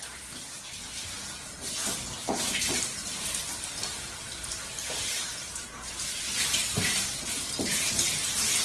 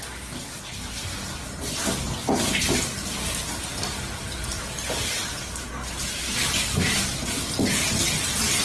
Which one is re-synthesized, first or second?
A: first